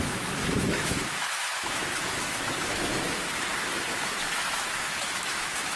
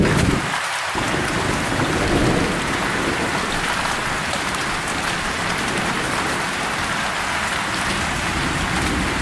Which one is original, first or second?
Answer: second